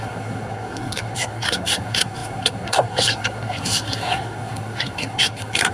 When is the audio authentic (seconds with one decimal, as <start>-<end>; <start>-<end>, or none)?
none